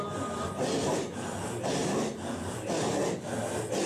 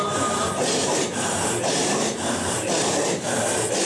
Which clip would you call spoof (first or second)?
second